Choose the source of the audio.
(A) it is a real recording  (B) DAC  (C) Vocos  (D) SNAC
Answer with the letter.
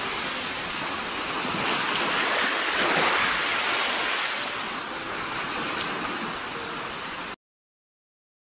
A